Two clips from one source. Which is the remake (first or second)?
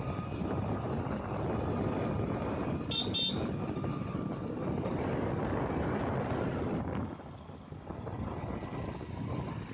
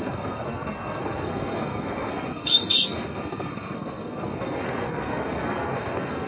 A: second